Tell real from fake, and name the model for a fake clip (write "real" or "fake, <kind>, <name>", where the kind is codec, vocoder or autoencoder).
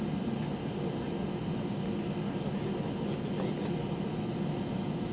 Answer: real